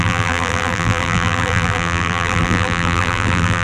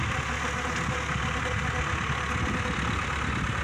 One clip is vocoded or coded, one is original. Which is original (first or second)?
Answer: second